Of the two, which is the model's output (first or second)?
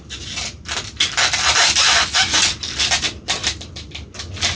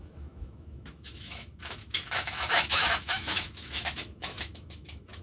second